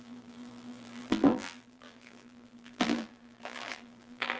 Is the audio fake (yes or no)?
yes